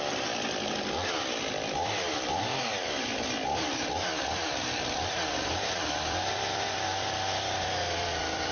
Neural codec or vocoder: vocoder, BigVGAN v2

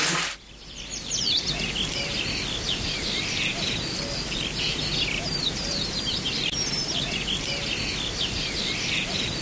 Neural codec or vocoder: vocoder, BigVGAN v2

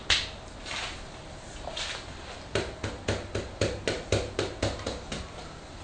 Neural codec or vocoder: none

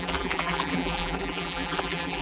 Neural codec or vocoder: vocoder, BigVGAN v2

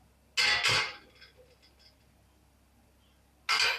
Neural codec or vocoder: none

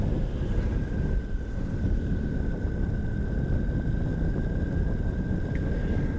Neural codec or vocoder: none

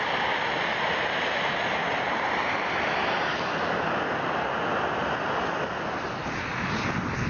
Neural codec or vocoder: none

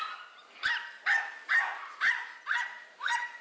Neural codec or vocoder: none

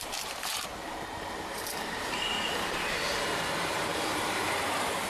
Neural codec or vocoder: vocoder, BigVGAN v2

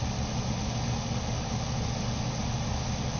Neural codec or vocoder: none